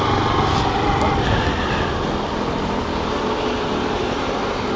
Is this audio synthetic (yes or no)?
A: no